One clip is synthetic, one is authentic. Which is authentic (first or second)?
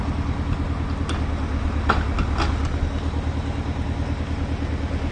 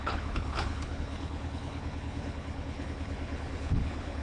first